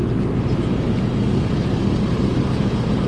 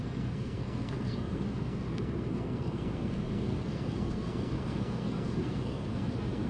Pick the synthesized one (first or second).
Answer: second